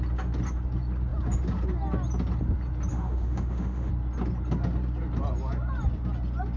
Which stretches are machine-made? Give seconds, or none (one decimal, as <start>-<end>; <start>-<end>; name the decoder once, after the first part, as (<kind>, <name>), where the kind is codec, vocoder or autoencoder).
2.9-3.9 (autoencoder, DAC-VAE)